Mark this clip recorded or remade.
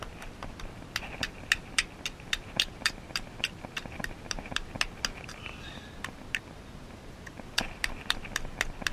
recorded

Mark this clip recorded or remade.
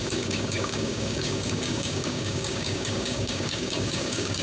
remade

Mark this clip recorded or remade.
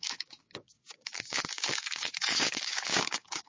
remade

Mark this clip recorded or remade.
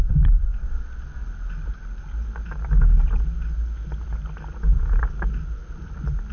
recorded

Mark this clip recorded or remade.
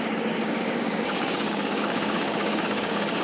remade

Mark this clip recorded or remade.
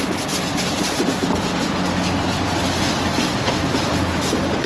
recorded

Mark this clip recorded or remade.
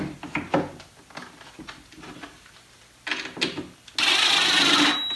recorded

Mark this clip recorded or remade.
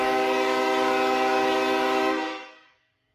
remade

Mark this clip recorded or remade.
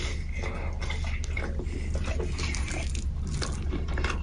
recorded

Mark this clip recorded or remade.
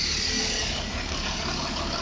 remade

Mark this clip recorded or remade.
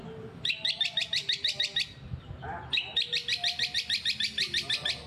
recorded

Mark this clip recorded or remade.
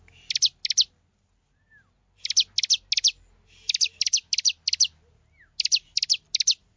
recorded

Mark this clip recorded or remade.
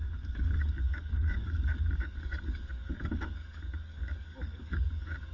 remade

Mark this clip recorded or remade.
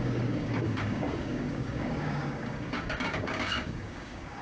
remade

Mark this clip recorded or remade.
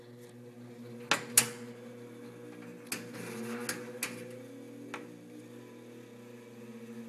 recorded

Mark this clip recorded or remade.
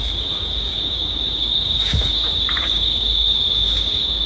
remade